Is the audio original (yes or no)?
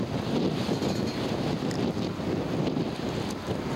yes